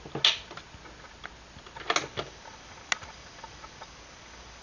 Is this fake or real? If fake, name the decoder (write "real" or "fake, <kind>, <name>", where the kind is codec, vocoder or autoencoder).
real